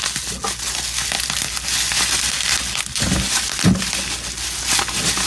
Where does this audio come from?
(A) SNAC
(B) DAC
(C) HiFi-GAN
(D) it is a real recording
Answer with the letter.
D